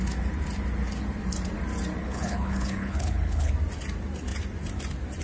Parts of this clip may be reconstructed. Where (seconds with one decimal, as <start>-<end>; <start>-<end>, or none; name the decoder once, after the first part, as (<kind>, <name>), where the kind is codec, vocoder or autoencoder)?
2.0-3.5 (codec, HILCodec)

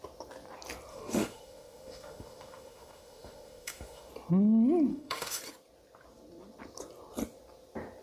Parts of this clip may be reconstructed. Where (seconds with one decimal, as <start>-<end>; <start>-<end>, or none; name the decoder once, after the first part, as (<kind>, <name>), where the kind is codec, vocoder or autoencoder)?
0.9-4.1 (autoencoder, DAC-VAE); 4.9-5.4

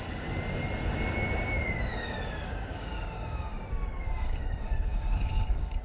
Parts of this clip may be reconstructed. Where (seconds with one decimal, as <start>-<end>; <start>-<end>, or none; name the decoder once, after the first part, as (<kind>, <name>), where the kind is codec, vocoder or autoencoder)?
1.9-5.8 (codec, DAC)

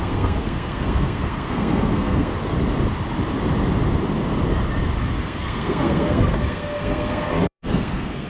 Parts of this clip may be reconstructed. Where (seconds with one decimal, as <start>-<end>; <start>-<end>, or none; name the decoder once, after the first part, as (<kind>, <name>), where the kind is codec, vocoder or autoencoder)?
0.0-2.3 (codec, SNAC); 5.2-8.3

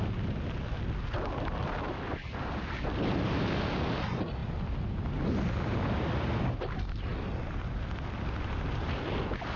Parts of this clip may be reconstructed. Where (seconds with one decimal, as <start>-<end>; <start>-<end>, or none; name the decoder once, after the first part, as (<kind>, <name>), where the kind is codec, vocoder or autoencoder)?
none

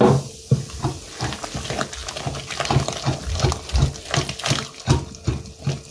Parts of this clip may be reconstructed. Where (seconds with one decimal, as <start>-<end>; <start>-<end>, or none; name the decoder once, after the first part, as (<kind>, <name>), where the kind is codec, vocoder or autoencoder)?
none